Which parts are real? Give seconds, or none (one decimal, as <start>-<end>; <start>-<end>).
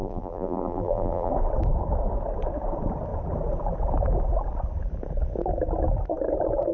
1.3-6.7